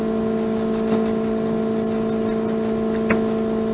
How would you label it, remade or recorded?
recorded